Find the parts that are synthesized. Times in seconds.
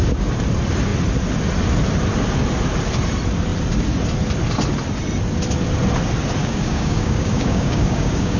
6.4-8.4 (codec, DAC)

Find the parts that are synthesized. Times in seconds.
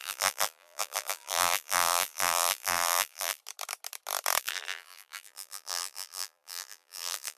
0.0-3.4 (vocoder, BigVGAN v2); 4.4-7.4